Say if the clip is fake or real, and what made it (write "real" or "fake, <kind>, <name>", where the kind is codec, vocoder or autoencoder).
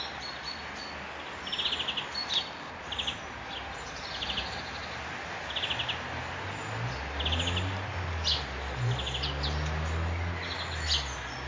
real